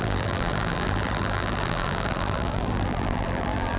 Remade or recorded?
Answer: remade